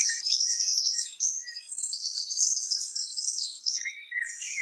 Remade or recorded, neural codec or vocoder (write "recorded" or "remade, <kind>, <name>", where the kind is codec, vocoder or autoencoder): remade, codec, SNAC